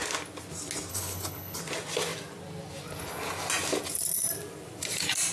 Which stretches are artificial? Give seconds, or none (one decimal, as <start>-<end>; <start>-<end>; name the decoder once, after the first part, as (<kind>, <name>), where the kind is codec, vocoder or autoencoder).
0.9-1.6 (codec, HILCodec)